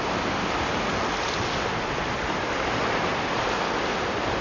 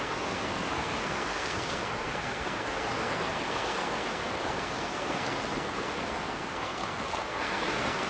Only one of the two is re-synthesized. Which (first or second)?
second